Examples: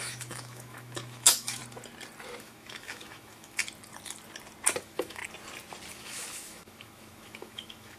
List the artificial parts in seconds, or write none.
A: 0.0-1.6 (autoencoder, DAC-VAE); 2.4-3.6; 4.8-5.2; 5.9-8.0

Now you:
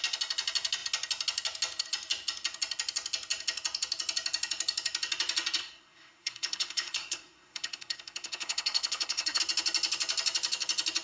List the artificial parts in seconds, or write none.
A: 5.6-9.4 (codec, SNAC)